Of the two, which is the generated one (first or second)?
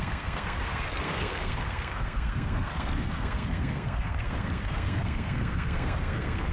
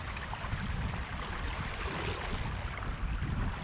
first